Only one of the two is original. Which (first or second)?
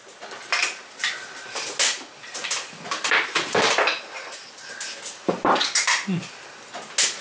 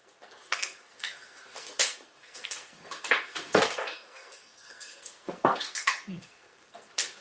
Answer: first